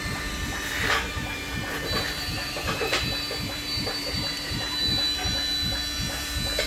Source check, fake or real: fake